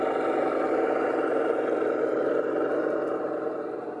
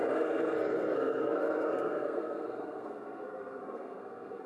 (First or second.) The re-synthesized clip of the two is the second